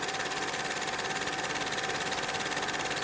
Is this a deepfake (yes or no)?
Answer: no